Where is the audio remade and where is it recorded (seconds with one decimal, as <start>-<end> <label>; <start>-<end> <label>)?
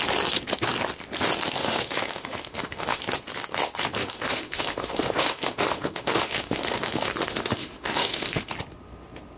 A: 0.0-1.6 recorded; 1.6-3.0 remade; 3.0-4.0 recorded; 4.0-8.5 remade; 8.5-9.4 recorded